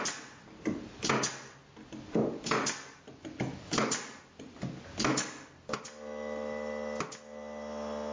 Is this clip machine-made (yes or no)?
no